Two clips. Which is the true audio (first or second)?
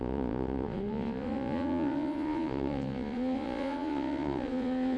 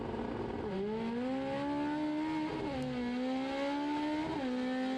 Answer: second